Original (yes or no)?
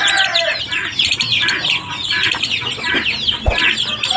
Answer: yes